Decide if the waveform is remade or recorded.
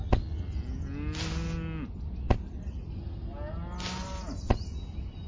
recorded